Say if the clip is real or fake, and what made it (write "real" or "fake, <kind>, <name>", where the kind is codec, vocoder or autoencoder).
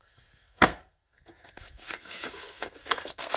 fake, codec, SNAC